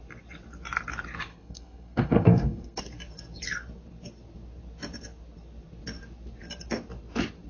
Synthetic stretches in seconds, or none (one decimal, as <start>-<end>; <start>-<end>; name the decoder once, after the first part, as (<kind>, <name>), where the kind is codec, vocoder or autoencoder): 1.3-2.8 (codec, SNAC)